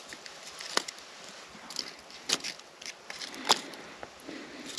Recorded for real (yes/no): yes